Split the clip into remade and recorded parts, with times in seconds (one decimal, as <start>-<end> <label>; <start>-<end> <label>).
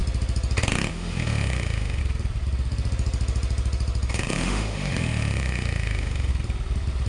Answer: 0.0-0.9 recorded; 0.9-2.0 remade; 2.0-4.1 recorded; 4.1-6.3 remade; 6.3-7.1 recorded